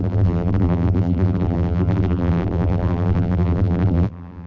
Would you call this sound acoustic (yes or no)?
no